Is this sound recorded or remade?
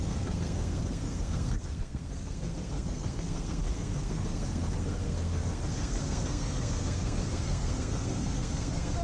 remade